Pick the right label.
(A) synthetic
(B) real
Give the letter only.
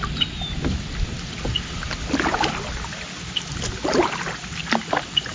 B